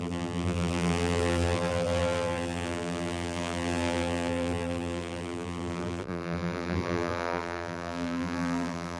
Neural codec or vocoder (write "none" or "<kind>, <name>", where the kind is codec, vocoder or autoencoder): vocoder, BigVGAN v2